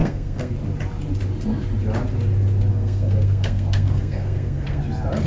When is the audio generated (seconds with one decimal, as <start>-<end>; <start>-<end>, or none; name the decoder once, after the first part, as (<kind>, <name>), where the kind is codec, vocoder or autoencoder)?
0.0-0.5 (codec, SNAC); 2.7-4.8